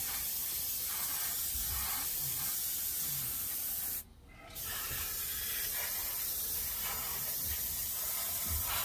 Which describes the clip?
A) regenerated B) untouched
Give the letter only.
B